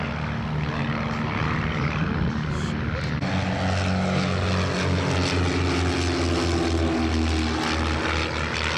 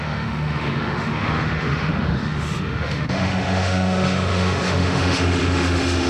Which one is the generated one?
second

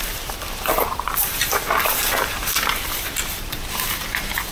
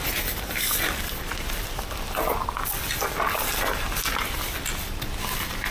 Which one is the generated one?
first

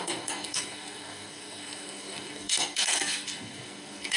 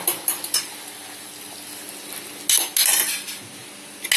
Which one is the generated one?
first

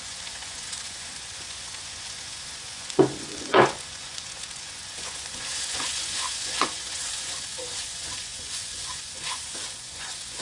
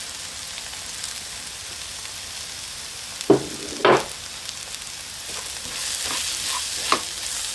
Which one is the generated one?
first